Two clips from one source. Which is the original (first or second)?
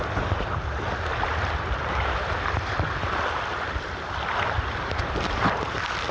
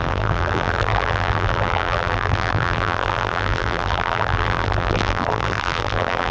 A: first